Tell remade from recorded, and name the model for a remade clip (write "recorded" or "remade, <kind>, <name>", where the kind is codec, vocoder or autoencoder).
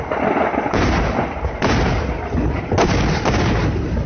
recorded